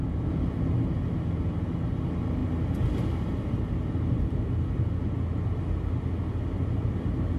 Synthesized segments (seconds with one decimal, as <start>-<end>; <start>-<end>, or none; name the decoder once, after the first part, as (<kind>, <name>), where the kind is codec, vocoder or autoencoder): none